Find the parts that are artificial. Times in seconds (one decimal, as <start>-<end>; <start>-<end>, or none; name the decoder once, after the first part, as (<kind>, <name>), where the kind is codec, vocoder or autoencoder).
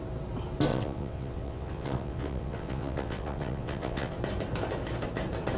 0.7-4.1 (vocoder, WaveNeXt)